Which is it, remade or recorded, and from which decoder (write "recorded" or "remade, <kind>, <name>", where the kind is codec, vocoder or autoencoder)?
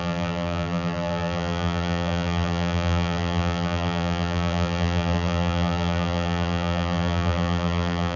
remade, vocoder, BigVGAN v2